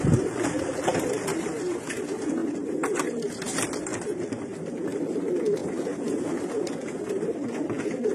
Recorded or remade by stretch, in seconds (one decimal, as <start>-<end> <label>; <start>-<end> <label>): 0.0-8.1 recorded